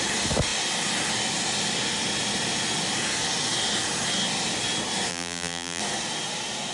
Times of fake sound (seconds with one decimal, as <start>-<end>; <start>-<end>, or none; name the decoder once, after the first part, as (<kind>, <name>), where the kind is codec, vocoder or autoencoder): 5.1-5.8 (vocoder, BigVGAN v2)